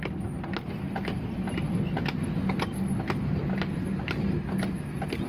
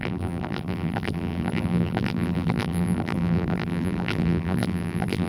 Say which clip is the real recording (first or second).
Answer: first